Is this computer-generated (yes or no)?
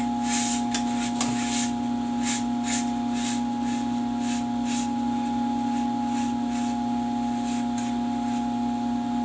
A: no